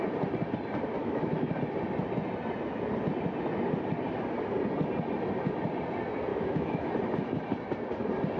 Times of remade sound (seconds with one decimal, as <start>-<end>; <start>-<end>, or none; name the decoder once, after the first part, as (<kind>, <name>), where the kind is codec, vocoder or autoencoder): 1.0-1.5 (autoencoder, DAC-VAE); 6.3-6.9